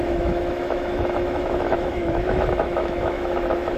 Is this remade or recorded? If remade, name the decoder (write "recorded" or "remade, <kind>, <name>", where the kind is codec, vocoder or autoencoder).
remade, autoencoder, DAC-VAE